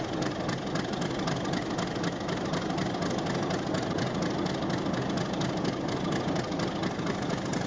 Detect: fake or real real